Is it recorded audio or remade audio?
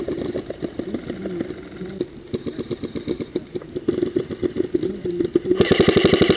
recorded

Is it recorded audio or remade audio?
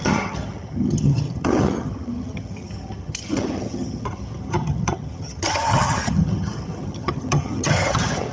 remade